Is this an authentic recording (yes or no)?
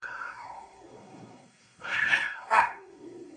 no